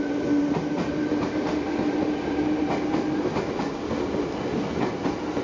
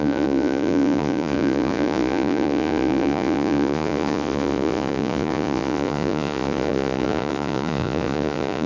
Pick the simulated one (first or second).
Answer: second